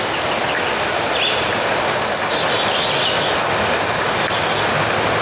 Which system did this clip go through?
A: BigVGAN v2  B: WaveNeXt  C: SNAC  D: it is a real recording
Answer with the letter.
D